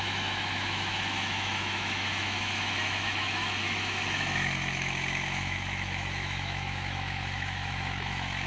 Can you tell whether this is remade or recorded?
remade